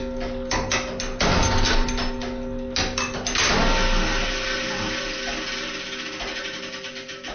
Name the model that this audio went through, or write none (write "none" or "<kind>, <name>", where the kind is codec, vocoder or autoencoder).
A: none